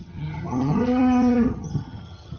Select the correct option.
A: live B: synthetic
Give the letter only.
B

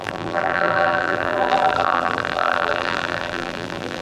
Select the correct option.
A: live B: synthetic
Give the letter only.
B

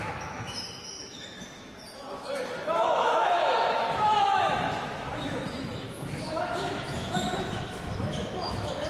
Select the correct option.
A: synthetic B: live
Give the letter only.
A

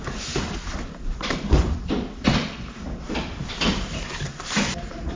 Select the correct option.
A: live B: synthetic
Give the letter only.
A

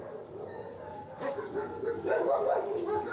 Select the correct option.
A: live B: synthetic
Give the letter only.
B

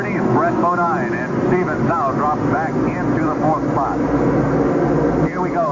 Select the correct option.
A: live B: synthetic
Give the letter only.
A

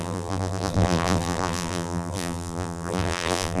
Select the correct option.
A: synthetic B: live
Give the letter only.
A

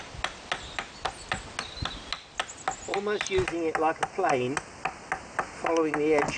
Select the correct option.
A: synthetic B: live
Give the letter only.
B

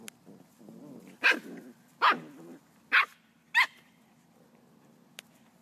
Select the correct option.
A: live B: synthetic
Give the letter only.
A